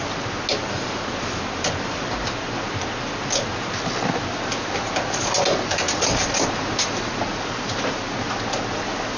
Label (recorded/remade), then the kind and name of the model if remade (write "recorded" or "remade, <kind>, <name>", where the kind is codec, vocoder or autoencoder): recorded